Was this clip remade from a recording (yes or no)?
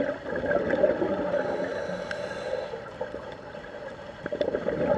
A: no